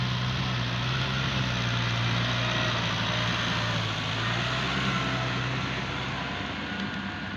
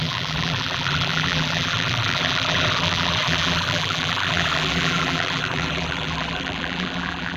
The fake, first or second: second